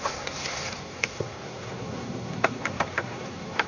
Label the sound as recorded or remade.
remade